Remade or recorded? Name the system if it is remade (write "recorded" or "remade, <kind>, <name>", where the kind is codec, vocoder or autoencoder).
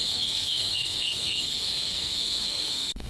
remade, codec, SNAC